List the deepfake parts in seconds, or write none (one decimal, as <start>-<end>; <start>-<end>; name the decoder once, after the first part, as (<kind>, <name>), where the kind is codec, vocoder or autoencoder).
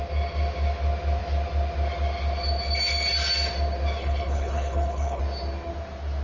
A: 4.0-5.2 (codec, HILCodec)